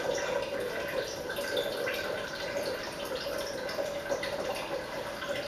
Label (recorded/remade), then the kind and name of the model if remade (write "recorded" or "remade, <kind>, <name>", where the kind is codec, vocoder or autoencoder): recorded